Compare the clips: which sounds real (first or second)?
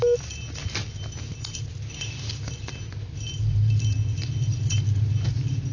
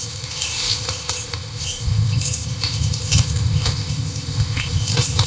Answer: first